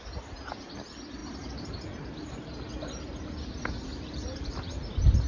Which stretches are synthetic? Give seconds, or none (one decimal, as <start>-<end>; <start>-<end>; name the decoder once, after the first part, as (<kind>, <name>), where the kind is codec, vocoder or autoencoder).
1.2-2.0 (vocoder, BigVGAN v2); 3.9-4.7